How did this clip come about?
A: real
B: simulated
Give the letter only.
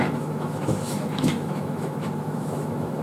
B